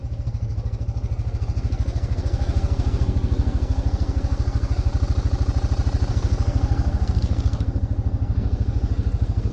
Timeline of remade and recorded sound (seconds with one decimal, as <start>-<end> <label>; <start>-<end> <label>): 0.0-4.9 remade; 4.9-6.1 recorded; 6.1-9.5 remade